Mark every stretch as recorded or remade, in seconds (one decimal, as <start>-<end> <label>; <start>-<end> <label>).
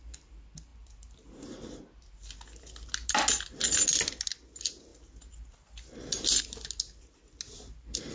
0.0-8.1 recorded